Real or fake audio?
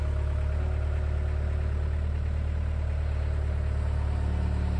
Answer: real